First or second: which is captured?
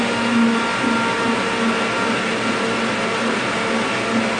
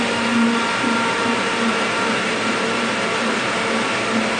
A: first